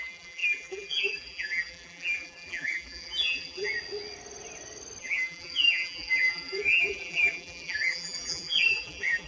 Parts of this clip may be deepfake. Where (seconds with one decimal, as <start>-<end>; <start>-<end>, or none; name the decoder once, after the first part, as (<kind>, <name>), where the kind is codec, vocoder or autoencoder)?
0.0-3.7 (vocoder, BigVGAN v2); 5.0-9.3